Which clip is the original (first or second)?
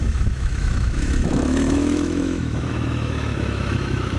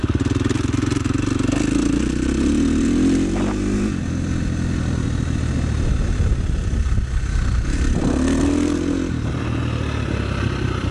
second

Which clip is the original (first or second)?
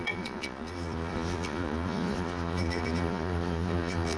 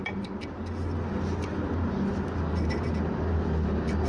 second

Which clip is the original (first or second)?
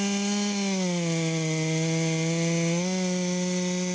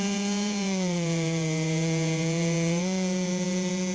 first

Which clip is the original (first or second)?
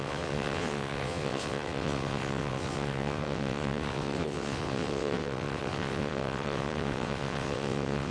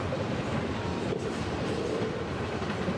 second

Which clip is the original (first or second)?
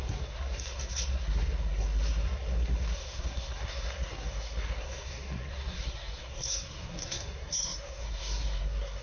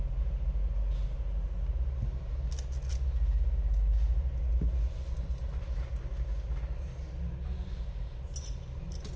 second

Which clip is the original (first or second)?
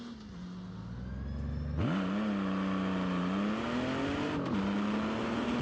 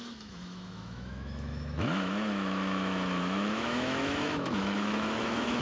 first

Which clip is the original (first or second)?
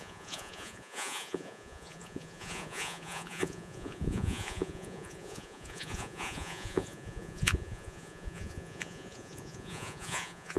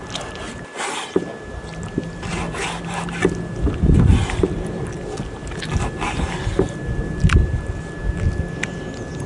second